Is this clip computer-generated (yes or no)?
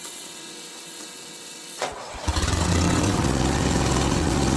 yes